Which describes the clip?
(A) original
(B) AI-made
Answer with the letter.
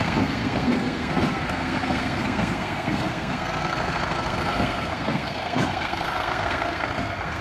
B